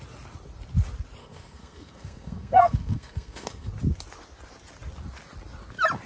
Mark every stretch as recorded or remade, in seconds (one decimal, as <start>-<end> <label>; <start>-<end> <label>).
0.0-1.2 recorded; 1.2-3.7 remade; 3.7-6.1 recorded